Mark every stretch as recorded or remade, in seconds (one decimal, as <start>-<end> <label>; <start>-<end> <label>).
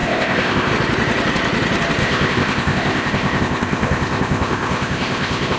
0.0-0.7 remade; 0.7-2.0 recorded; 2.0-5.6 remade